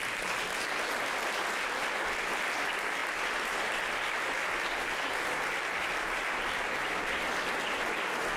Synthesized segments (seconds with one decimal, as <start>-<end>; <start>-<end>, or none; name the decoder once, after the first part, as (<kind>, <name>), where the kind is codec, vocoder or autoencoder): none